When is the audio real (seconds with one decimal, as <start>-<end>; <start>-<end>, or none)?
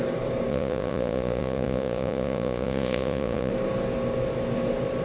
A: 0.0-0.5; 3.5-5.0